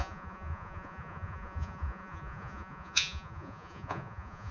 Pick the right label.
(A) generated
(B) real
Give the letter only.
A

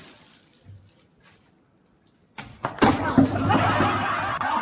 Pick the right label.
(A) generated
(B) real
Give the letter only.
B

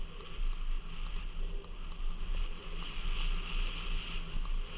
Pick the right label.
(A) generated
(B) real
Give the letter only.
B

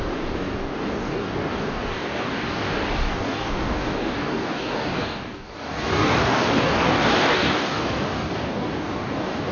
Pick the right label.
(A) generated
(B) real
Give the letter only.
A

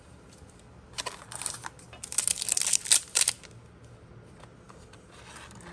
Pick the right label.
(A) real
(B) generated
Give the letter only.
A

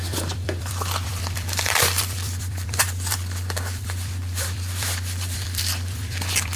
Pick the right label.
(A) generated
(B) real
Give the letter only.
A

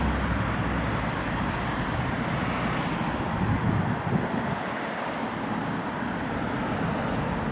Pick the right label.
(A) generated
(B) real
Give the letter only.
B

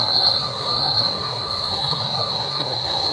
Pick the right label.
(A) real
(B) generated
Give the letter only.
B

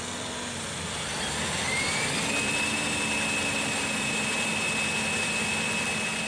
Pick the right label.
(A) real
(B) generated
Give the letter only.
A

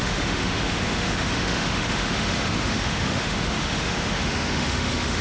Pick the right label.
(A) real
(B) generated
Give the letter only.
B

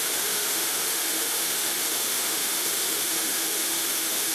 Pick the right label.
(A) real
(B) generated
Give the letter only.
B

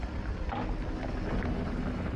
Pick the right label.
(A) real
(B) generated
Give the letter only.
A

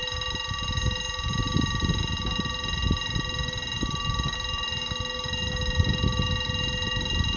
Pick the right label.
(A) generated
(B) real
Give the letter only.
B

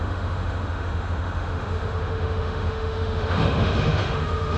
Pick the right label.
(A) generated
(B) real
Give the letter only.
A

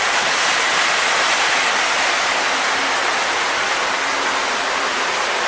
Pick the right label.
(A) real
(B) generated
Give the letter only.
A